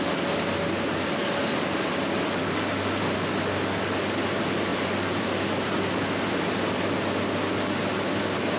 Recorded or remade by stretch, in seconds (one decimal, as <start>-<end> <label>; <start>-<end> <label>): 0.0-4.7 recorded; 4.7-5.4 remade; 5.4-8.6 recorded